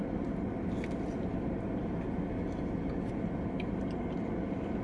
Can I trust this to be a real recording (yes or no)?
yes